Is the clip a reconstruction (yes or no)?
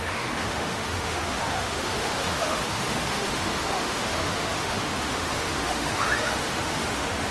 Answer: yes